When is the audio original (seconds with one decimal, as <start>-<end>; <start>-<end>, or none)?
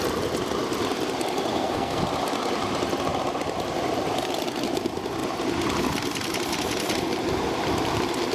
0.0-1.5; 2.0-8.3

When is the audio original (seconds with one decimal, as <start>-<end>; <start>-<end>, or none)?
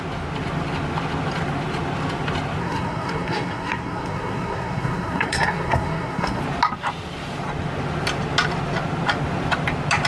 0.0-2.6; 6.4-10.1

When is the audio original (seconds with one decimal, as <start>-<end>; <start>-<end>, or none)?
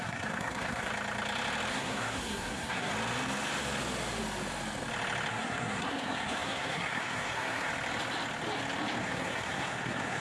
0.9-1.7; 2.9-5.3; 7.7-9.0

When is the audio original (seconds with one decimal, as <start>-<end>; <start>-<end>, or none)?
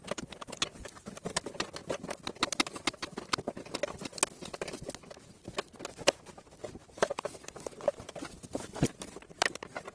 0.0-9.9